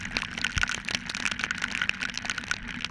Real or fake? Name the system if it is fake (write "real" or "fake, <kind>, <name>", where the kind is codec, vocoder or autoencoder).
real